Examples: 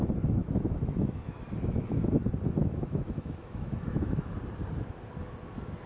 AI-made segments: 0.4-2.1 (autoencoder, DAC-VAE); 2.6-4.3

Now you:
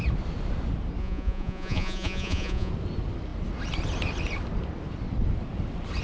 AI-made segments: 1.0-2.7 (vocoder, Vocos)

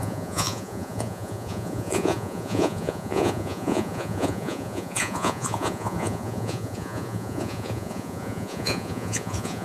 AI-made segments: 0.0-9.6 (vocoder, Vocos)